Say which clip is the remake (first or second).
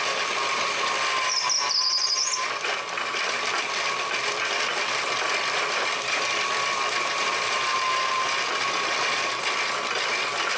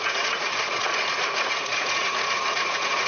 second